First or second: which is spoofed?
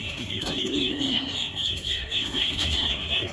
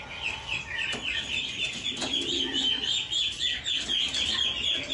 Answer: first